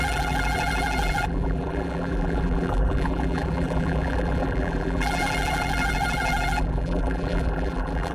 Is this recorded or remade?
remade